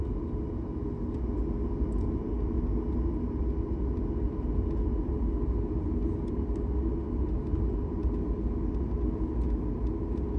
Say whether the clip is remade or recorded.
recorded